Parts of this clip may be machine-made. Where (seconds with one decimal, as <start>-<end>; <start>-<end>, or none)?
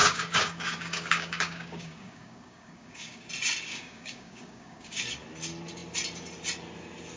0.0-3.3; 3.7-5.0